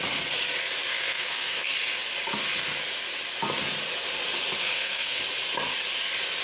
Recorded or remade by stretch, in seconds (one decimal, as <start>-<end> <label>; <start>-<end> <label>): 0.0-0.9 recorded; 0.9-1.7 remade; 1.7-4.6 recorded; 4.6-5.2 remade; 5.2-6.4 recorded